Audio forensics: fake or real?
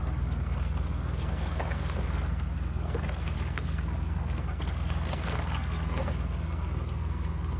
fake